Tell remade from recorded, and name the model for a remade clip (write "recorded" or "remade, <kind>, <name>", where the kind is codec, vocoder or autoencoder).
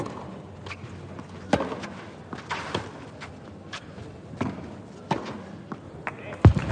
recorded